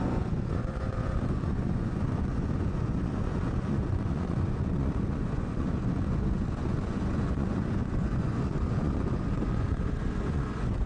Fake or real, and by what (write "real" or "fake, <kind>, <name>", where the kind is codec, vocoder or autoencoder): fake, vocoder, Vocos